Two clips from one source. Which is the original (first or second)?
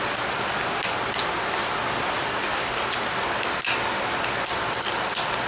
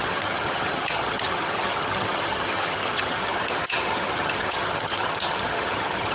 first